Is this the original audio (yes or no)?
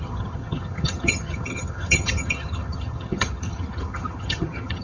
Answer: no